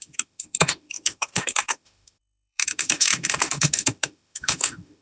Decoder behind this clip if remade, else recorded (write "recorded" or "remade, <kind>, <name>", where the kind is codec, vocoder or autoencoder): remade, autoencoder, DAC-VAE